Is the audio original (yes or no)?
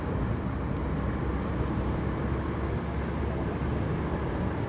yes